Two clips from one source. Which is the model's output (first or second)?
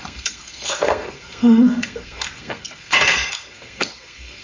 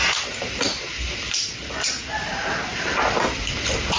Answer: first